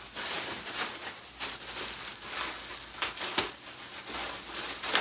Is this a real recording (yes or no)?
yes